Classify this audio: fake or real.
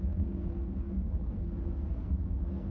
fake